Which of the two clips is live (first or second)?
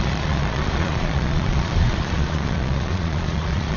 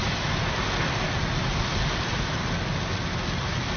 second